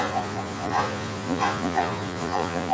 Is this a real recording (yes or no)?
no